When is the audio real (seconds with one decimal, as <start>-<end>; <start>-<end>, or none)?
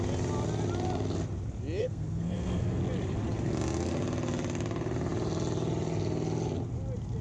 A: 0.0-1.8; 2.8-7.2